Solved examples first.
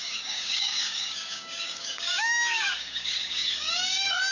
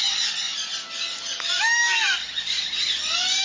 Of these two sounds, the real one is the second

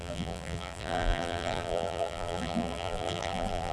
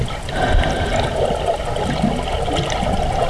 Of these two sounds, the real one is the second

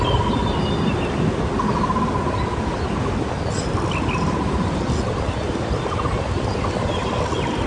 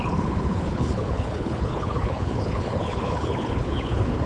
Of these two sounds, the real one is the first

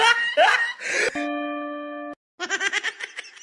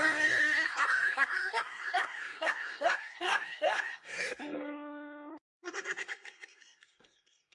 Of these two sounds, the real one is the first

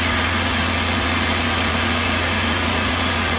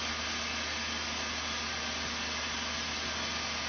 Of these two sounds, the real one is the second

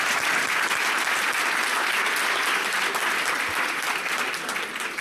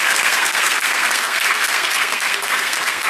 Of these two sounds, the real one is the first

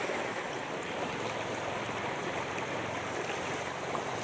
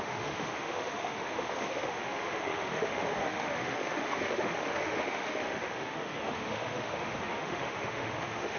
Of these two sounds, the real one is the first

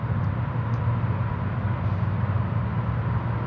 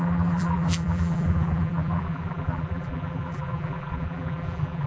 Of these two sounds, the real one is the first